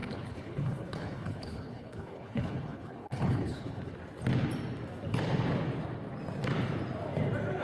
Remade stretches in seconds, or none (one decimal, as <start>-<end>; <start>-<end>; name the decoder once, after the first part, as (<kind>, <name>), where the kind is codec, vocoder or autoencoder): 0.0-3.9 (codec, HILCodec)